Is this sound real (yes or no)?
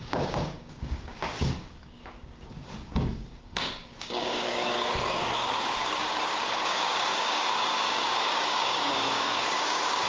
no